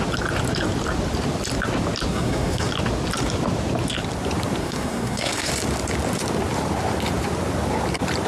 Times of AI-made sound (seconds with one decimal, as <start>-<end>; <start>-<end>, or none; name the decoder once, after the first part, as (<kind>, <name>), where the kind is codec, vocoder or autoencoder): 2.1-2.7 (codec, SNAC); 4.6-5.5